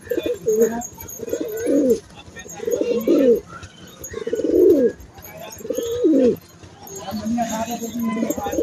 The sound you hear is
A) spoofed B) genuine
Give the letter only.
B